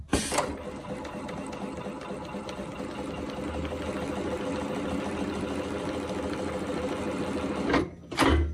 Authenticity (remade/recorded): recorded